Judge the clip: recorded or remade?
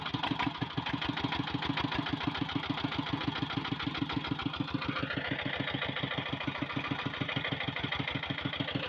recorded